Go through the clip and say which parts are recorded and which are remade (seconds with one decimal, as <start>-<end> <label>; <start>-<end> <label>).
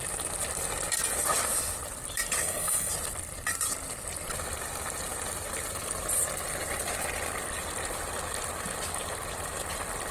0.0-2.4 recorded; 2.4-2.9 remade; 2.9-10.1 recorded